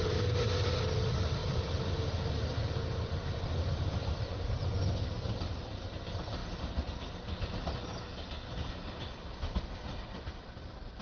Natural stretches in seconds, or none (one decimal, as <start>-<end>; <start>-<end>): 1.4-5.3; 6.4-8.7